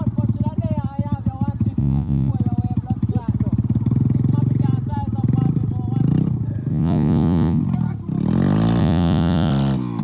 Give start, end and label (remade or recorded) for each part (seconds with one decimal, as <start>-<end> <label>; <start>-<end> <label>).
0.0-1.8 recorded; 1.8-2.3 remade; 2.3-6.7 recorded; 6.7-7.6 remade; 7.6-8.8 recorded; 8.8-9.5 remade; 9.5-10.0 recorded